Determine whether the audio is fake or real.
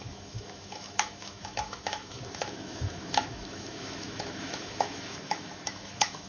fake